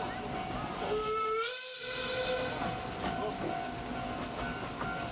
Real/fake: real